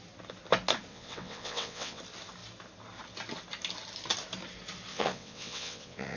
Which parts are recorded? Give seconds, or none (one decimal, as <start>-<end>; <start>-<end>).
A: 0.0-0.9; 2.0-4.9